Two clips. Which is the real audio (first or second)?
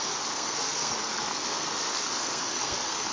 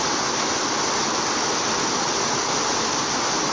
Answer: second